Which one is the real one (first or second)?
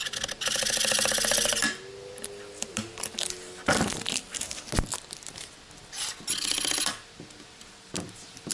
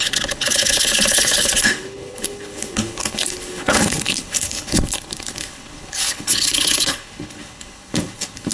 first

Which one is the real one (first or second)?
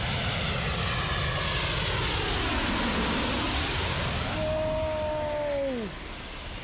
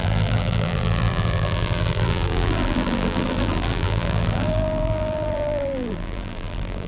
first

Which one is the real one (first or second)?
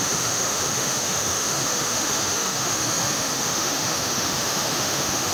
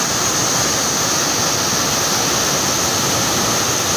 second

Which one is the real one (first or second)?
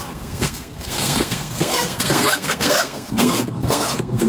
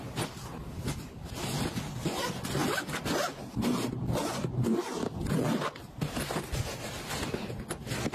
second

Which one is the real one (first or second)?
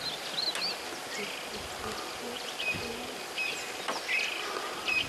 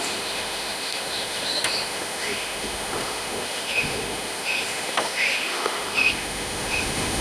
first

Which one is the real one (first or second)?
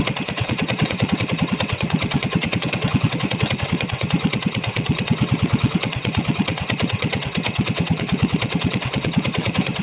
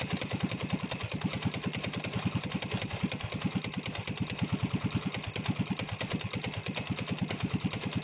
second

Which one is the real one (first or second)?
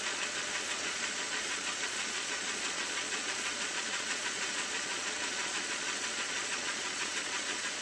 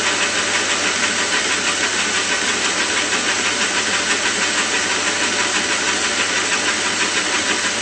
second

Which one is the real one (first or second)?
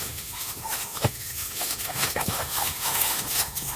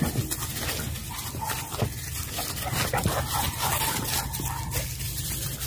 second